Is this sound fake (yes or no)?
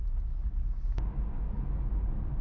no